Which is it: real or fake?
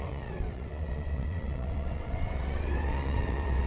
fake